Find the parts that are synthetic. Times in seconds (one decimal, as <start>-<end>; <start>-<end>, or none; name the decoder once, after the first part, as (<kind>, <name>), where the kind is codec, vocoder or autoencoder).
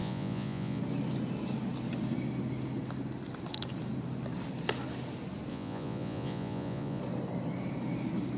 0.0-0.8 (vocoder, Vocos); 5.5-7.0